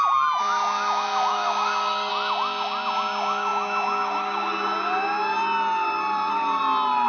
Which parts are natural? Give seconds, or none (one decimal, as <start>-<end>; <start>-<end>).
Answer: 0.0-1.3; 2.1-7.1